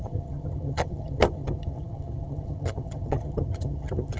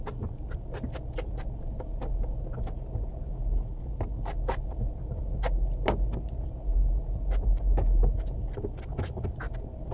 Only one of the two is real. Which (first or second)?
second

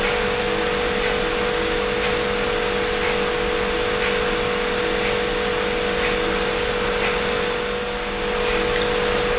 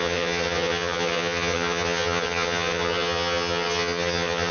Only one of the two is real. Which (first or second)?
first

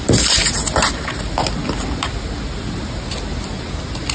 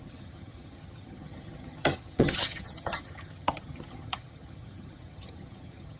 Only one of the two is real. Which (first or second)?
first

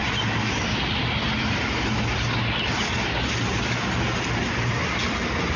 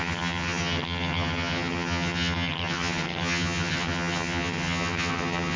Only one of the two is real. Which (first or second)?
first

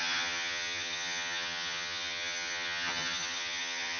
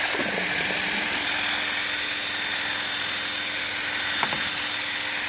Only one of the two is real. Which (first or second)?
second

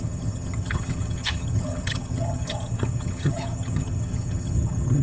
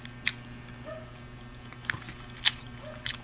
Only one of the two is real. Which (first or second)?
second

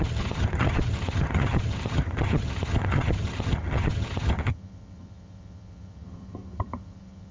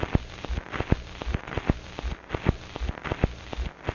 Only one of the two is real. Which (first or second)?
second